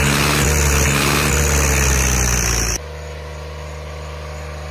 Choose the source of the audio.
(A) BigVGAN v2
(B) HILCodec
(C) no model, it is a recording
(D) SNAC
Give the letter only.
C